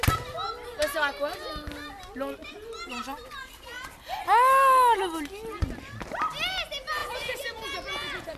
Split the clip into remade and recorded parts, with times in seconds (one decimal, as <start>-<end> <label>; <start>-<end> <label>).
0.0-7.0 recorded; 7.0-8.4 remade